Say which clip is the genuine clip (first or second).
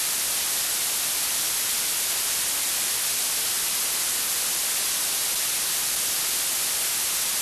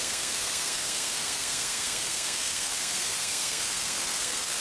first